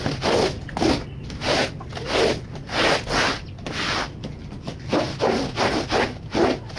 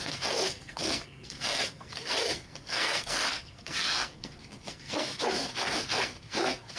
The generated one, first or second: second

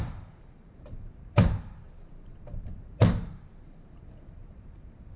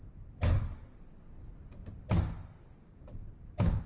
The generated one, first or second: first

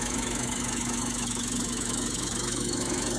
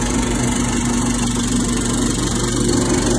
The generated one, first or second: first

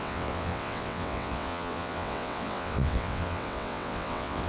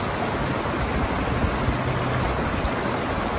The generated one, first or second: first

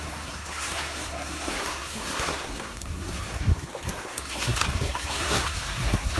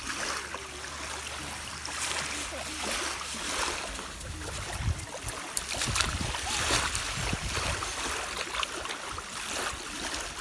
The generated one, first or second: first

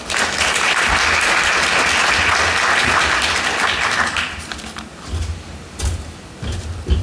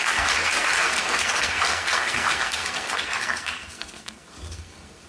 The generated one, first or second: second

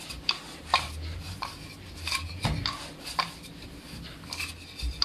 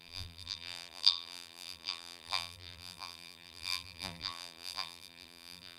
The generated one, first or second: second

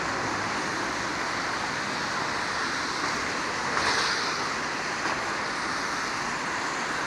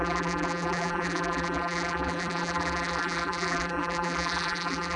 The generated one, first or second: second